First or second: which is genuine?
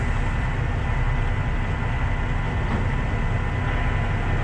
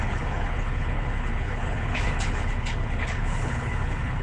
first